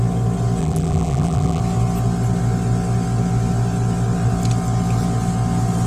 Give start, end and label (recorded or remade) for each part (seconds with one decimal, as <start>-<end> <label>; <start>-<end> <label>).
0.0-0.6 recorded; 0.6-1.6 remade; 1.6-5.9 recorded